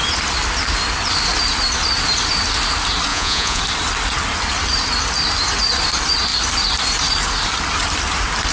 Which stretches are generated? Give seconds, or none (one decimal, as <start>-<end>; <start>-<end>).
3.1-3.6